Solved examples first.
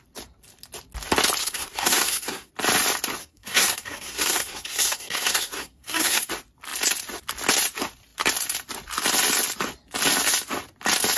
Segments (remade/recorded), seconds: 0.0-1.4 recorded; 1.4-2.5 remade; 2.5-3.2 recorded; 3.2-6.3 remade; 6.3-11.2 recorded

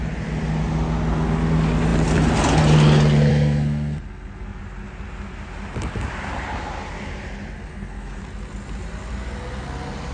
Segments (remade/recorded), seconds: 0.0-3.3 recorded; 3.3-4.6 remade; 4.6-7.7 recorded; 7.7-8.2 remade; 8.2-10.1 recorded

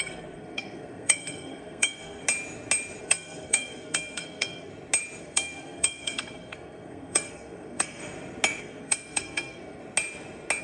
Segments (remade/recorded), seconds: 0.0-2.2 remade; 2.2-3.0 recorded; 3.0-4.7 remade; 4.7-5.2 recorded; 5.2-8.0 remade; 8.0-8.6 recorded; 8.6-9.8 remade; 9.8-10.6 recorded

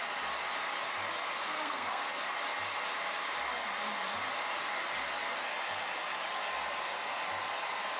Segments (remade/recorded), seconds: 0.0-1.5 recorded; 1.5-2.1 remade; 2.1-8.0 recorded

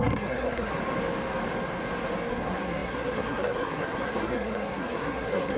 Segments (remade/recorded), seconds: 0.0-0.8 remade; 0.8-2.3 recorded; 2.3-5.6 remade

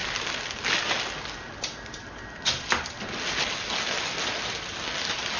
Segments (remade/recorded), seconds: 0.0-5.4 recorded